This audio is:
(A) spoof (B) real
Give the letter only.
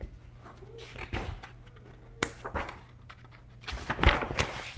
B